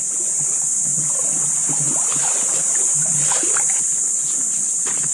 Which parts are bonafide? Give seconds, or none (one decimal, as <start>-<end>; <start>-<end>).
0.0-5.1